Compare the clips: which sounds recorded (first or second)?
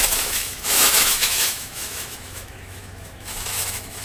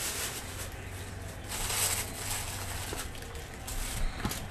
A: second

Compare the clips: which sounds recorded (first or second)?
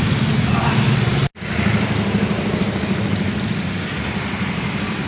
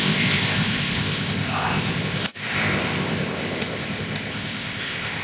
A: first